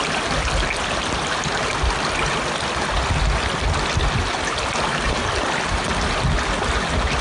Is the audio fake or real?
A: real